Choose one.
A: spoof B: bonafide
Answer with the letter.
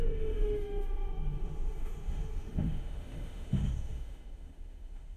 A